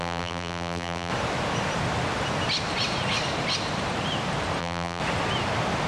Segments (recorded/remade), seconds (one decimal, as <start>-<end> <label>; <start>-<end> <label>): 0.0-1.1 remade; 1.1-4.6 recorded; 4.6-5.0 remade; 5.0-5.9 recorded